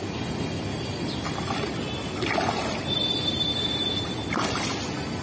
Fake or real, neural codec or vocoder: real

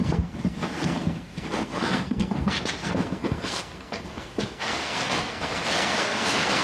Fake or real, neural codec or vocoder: fake, codec, SNAC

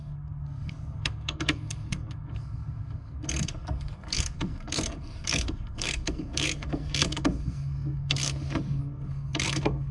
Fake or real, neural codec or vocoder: fake, codec, SNAC